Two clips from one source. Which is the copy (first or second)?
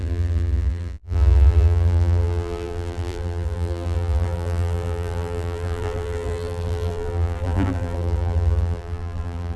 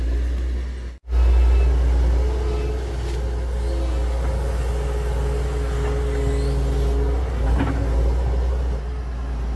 first